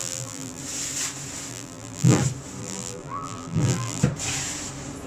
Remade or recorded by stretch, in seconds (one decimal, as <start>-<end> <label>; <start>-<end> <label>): 0.0-0.6 remade; 0.6-1.5 recorded; 1.5-2.2 remade; 2.2-2.6 recorded; 2.6-4.0 remade; 4.0-5.1 recorded